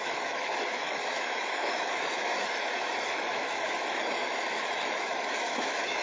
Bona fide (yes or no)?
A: no